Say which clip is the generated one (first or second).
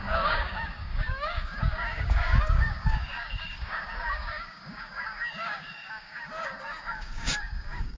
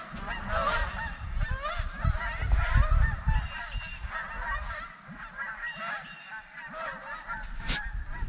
first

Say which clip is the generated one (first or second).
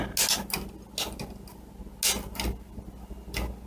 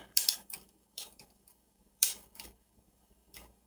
second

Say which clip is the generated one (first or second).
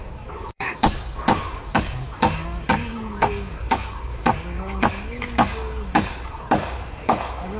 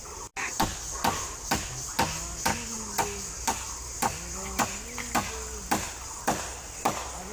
first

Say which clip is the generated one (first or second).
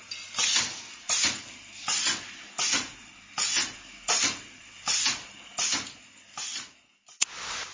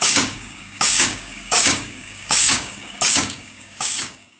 second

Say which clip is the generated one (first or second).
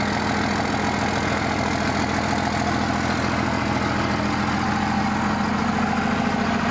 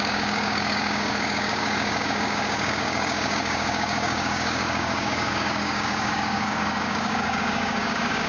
second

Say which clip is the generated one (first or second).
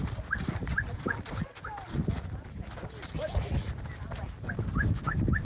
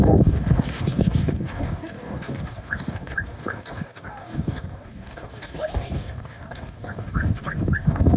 second